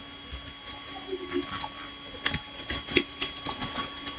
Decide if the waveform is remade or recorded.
recorded